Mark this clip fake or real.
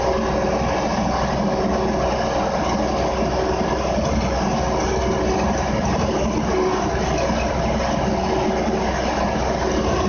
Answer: real